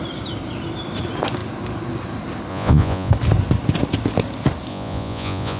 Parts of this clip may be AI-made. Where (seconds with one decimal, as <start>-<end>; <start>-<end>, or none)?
2.5-3.1; 4.7-5.6

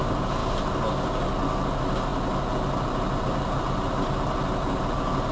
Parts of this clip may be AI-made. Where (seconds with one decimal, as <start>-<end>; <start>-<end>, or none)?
none

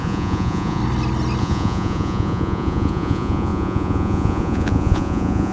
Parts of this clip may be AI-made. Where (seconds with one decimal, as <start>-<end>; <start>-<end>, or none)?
0.0-0.8; 1.4-5.5